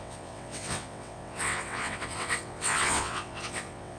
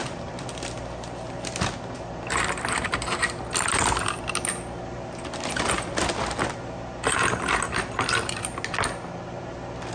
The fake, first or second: first